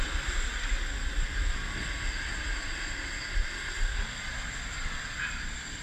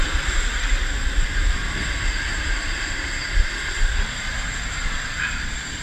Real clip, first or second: first